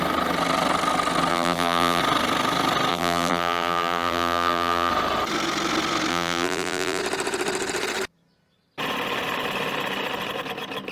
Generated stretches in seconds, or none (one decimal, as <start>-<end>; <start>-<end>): 1.3-2.0; 2.9-4.9; 6.1-7.0